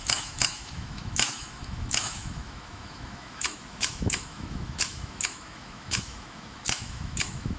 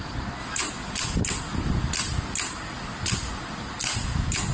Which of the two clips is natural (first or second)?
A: second